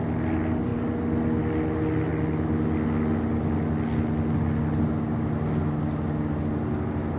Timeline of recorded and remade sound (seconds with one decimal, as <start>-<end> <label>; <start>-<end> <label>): 0.0-7.2 recorded